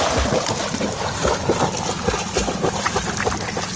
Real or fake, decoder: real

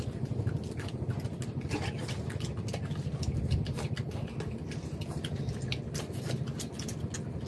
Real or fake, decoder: real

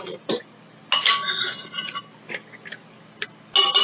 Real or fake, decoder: real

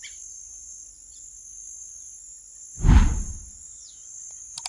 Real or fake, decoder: real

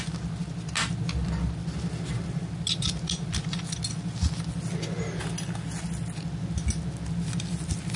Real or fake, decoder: real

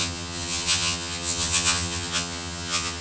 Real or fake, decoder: fake, vocoder, HiFi-GAN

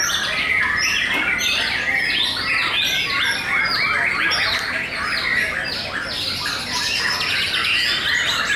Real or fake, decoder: real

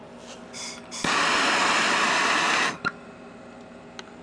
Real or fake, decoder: real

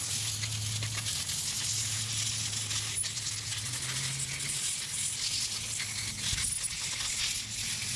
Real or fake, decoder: real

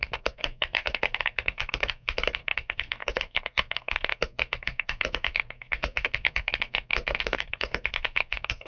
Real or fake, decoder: fake, codec, SNAC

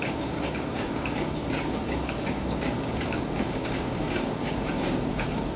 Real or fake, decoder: fake, codec, DAC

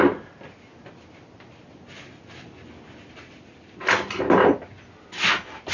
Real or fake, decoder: real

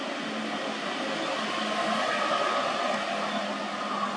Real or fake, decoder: real